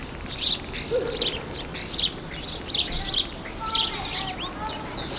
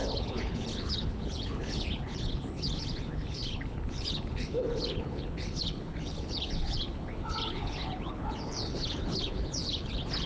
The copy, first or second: second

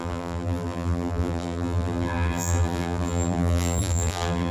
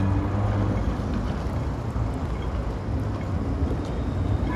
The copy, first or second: first